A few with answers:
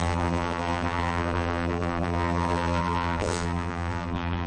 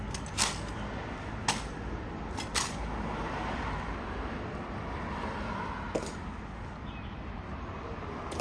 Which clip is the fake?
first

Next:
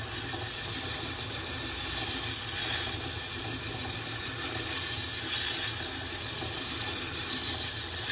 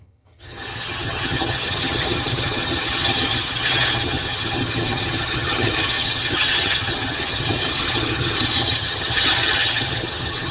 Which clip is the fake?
second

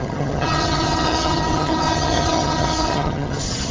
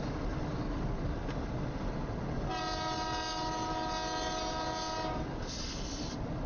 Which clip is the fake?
first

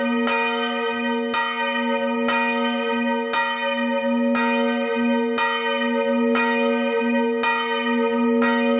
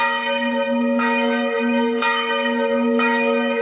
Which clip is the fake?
second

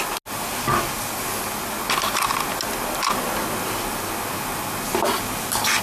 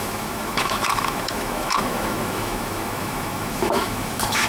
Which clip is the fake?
second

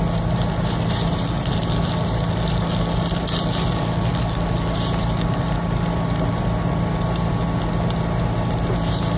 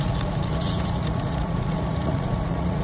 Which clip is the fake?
second